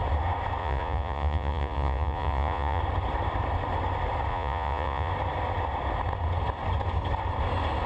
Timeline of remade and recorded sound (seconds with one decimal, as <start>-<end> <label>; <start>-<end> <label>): 0.0-0.6 recorded; 0.6-2.8 remade; 2.8-4.3 recorded; 4.3-5.1 remade; 5.1-7.9 recorded